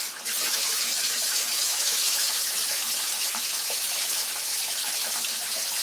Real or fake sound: fake